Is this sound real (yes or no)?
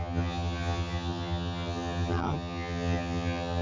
no